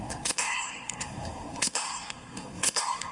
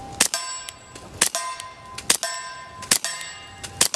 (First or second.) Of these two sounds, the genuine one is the second